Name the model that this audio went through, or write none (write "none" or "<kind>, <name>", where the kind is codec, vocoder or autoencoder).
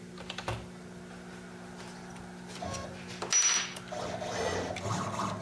none